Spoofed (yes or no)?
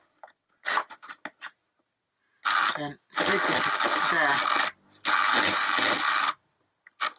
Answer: no